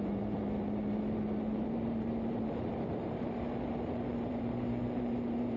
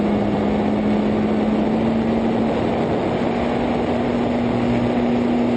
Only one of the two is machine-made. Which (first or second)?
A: first